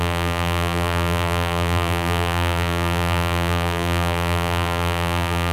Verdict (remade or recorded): remade